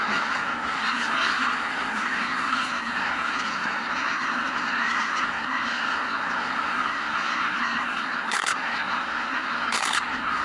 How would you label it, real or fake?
fake